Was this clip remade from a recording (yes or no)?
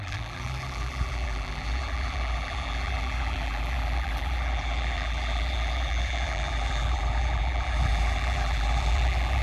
yes